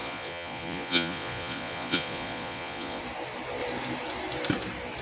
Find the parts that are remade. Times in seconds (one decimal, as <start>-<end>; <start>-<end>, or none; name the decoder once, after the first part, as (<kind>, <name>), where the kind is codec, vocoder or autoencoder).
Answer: 0.0-3.0 (vocoder, Vocos)